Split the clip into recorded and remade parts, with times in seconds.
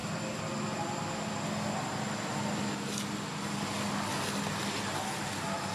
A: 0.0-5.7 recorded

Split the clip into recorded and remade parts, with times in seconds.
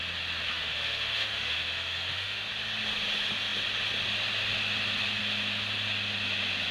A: 0.0-0.5 recorded; 0.5-2.5 remade; 2.5-6.7 recorded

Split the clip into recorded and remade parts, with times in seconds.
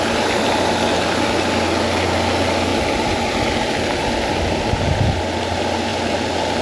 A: 0.0-6.6 recorded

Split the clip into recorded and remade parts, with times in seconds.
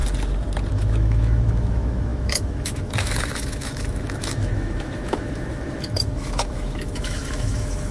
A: 0.0-0.7 recorded; 0.7-7.9 remade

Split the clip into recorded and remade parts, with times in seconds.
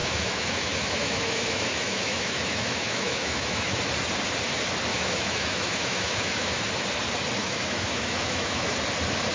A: 0.0-3.8 remade; 3.8-4.9 recorded; 4.9-6.6 remade; 6.6-7.4 recorded; 7.4-8.7 remade; 8.7-9.3 recorded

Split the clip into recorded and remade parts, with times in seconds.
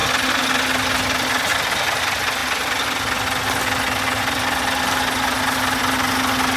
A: 0.0-6.6 recorded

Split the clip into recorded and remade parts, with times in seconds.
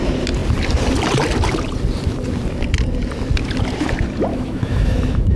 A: 0.0-4.3 recorded; 4.3-5.4 remade